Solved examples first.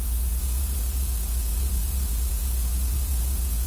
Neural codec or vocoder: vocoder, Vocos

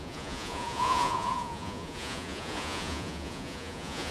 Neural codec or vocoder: vocoder, Vocos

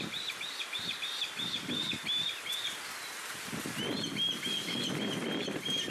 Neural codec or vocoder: none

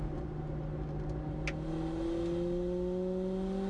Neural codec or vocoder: none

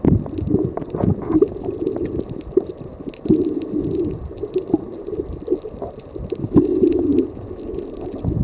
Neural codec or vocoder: none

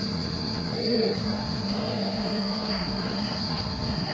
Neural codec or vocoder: codec, SNAC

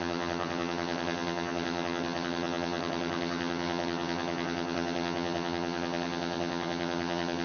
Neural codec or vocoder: vocoder, HiFi-GAN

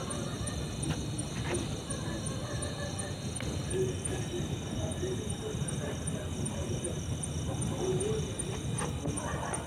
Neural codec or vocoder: none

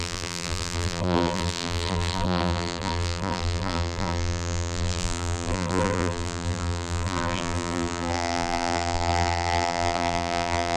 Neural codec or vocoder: vocoder, BigVGAN v2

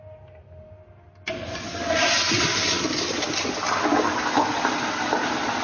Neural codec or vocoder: none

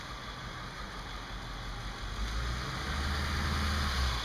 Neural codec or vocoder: none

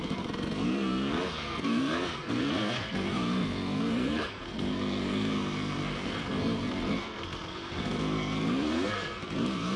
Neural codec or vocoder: codec, SNAC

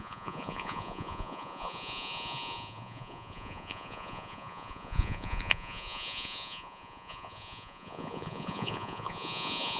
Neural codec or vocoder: vocoder, Vocos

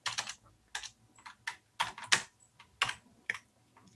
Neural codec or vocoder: none